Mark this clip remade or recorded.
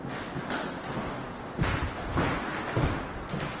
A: recorded